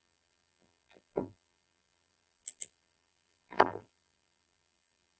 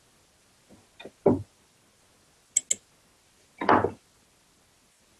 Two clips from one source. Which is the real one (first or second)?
second